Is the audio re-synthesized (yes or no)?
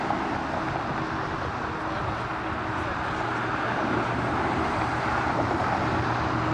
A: no